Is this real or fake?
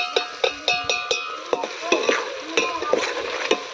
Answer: real